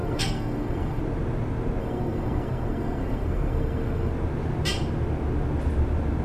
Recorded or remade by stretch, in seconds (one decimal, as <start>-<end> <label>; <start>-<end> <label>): 0.0-1.0 remade; 1.0-1.8 recorded; 1.8-4.1 remade; 4.1-6.2 recorded